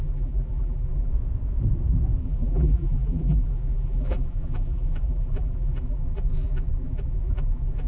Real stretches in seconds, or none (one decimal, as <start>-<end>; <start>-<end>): 1.1-2.2

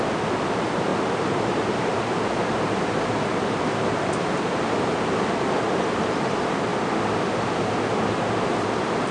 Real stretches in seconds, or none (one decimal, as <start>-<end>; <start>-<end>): 6.7-8.1

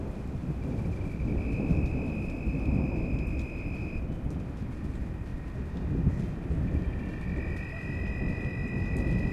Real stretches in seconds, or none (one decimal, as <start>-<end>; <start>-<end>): 0.0-0.4; 4.4-9.3